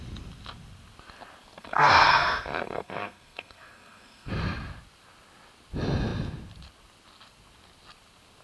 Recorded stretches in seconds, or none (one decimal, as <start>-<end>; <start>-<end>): 0.0-1.6; 4.3-8.4